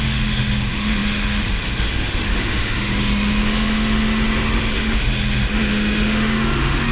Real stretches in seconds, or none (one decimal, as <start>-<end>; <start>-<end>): none